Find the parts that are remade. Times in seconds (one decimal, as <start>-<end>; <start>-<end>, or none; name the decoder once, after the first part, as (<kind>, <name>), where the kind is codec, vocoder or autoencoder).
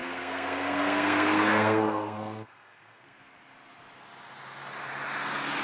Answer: 0.0-3.2 (codec, SNAC)